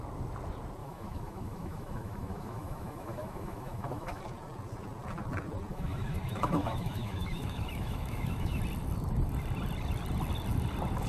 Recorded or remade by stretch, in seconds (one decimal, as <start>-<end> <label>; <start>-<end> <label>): 0.0-0.8 recorded; 0.8-4.2 remade; 4.2-5.7 recorded; 5.7-8.6 remade; 8.6-11.1 recorded